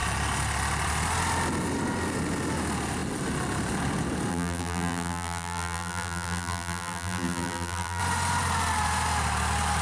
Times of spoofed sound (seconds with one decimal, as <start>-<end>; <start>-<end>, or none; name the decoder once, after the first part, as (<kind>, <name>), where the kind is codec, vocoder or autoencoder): 4.3-8.0 (vocoder, BigVGAN v2)